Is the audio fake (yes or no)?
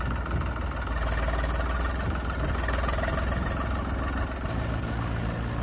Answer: no